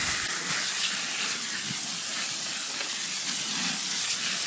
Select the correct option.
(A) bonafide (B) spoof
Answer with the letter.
A